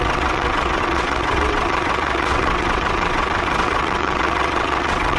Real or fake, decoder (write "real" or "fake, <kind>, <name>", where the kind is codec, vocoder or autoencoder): fake, vocoder, WaveNeXt